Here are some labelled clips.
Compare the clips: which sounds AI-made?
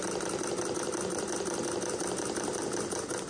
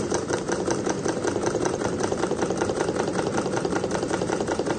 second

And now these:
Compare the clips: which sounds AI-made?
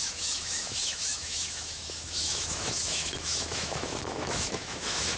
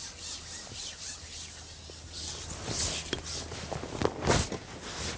first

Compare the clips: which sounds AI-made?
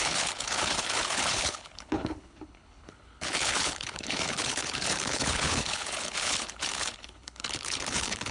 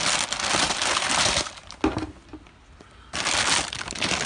first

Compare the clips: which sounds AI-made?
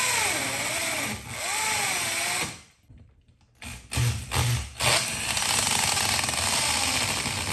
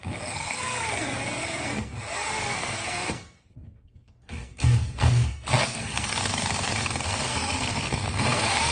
second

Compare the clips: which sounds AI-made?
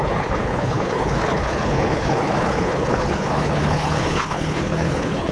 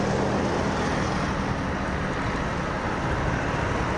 first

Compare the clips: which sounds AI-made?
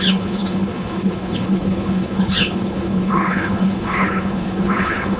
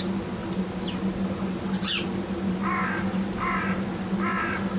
first